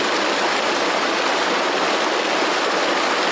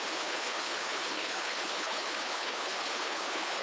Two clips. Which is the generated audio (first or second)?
second